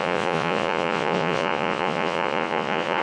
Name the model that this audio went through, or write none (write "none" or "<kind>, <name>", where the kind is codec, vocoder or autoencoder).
vocoder, Vocos